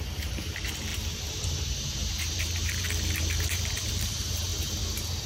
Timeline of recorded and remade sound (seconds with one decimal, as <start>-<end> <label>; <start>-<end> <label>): 0.0-4.5 remade; 4.5-5.3 recorded